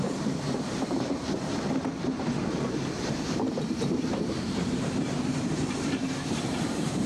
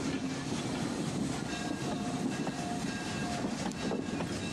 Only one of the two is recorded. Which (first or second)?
second